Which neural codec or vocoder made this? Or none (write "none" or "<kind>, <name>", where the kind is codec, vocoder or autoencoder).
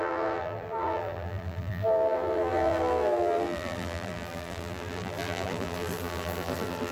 vocoder, BigVGAN v2